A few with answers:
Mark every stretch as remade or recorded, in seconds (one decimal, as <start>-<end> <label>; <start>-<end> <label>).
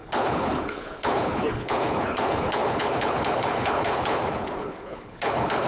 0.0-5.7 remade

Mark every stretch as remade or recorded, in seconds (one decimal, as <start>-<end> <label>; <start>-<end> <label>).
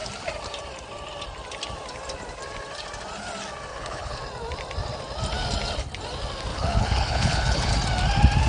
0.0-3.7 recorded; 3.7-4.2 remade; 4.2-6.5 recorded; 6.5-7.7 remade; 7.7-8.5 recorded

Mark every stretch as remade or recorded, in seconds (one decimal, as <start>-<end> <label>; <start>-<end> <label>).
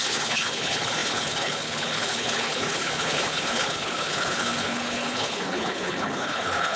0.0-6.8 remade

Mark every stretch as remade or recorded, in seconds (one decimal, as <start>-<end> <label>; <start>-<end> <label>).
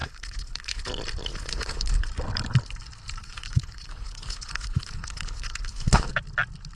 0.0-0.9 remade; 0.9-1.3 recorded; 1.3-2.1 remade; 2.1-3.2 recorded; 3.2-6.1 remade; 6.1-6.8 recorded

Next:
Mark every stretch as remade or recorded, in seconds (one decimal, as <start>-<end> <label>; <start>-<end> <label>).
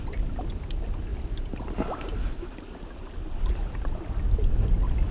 0.0-5.1 recorded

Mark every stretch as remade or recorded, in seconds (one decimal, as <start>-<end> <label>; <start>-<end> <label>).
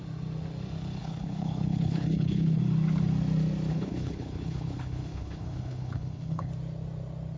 0.0-1.0 recorded; 1.0-2.6 remade; 2.6-3.7 recorded; 3.7-6.5 remade; 6.5-7.4 recorded